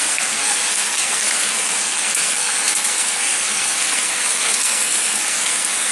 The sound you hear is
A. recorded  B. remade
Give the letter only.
B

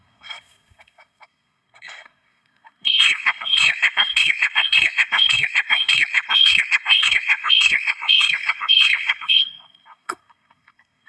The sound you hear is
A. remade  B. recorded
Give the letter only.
A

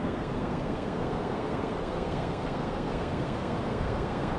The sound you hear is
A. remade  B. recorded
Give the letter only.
A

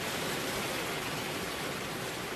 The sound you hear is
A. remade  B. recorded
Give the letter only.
B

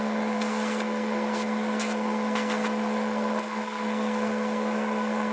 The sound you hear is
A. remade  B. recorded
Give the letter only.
A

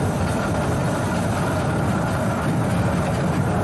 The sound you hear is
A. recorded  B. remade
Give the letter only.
A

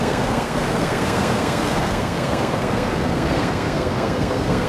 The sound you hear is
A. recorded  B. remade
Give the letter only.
B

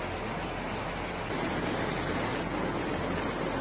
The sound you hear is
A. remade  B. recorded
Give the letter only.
B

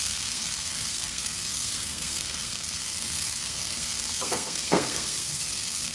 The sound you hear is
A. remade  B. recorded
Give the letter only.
A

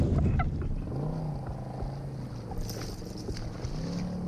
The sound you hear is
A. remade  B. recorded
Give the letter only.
B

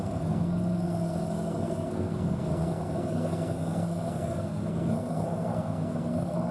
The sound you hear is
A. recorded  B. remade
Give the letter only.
B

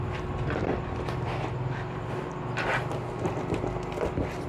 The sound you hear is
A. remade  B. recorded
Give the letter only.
B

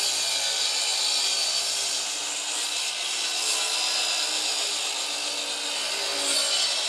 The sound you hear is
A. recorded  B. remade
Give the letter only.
A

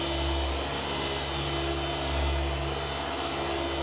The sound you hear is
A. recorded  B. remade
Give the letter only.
A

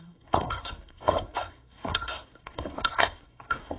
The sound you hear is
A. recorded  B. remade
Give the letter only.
B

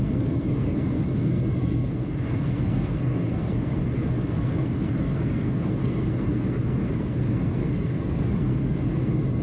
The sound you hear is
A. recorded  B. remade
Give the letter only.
B